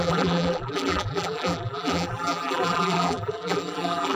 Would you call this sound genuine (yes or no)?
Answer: no